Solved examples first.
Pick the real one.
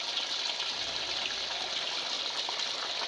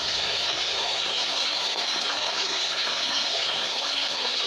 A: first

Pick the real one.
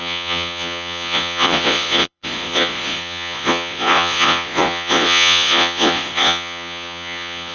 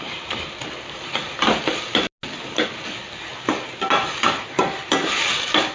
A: second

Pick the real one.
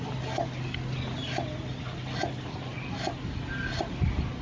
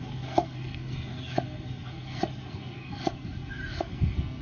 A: first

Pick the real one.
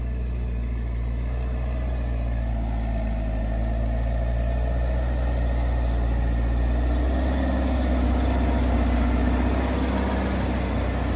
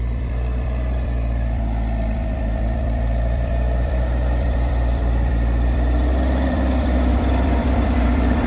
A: first